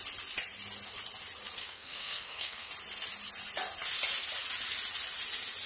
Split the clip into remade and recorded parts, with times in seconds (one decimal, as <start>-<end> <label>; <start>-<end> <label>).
0.0-1.6 recorded; 1.6-2.7 remade; 2.7-5.7 recorded